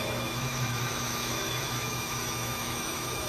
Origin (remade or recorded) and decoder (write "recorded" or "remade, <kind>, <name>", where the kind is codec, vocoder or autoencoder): remade, autoencoder, DAC-VAE